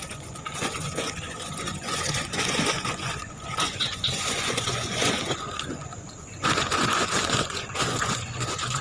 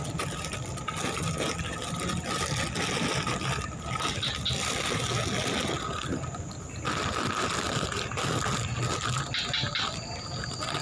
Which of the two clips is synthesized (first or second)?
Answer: first